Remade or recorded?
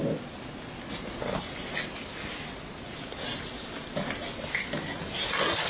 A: recorded